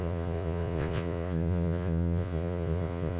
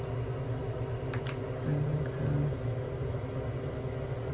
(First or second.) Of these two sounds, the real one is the second